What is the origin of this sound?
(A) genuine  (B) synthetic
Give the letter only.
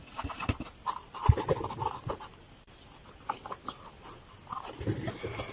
A